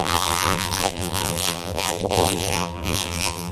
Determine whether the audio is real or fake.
fake